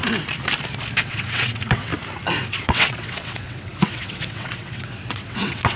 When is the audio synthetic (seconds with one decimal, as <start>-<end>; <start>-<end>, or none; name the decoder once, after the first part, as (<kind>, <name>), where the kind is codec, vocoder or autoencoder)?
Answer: 1.0-1.9 (vocoder, WaveNeXt); 2.5-5.8